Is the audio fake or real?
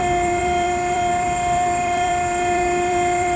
fake